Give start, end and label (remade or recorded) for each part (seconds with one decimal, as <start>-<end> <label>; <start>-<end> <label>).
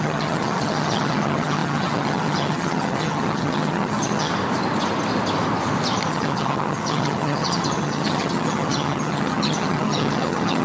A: 0.0-4.3 remade; 4.3-6.1 recorded; 6.1-10.6 remade